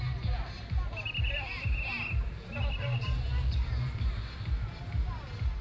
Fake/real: real